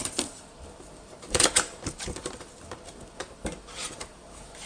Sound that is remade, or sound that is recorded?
remade